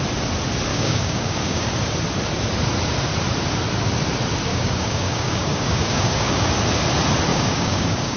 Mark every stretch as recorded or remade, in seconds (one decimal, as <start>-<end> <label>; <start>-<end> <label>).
0.0-0.7 recorded; 0.7-1.7 remade; 1.7-4.5 recorded; 4.5-6.5 remade; 6.5-7.3 recorded; 7.3-8.2 remade